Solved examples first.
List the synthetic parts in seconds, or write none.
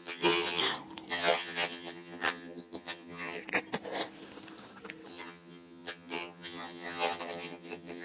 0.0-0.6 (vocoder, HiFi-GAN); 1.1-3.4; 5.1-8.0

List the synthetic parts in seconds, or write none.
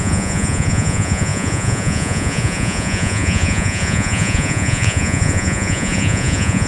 0.0-6.7 (vocoder, Vocos)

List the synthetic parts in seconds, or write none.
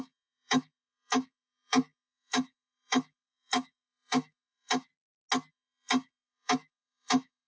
0.0-4.9 (codec, DAC); 5.5-7.5